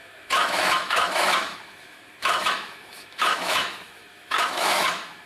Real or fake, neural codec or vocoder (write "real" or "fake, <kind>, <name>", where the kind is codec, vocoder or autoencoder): fake, autoencoder, DAC-VAE